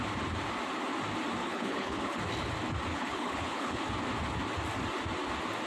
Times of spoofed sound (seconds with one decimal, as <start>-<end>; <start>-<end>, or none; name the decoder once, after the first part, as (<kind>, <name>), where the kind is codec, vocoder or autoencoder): 1.4-2.2 (codec, HILCodec); 2.9-3.9